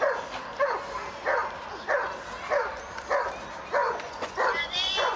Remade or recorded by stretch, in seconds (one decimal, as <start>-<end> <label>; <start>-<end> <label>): 0.0-3.8 recorded; 3.8-5.2 remade